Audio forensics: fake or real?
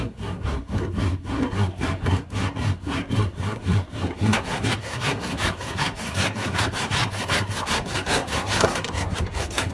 fake